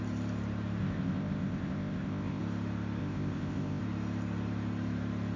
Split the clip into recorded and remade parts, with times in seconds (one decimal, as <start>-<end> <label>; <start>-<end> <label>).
0.0-0.8 recorded; 0.8-2.4 remade; 2.4-3.0 recorded; 3.0-3.8 remade; 3.8-5.4 recorded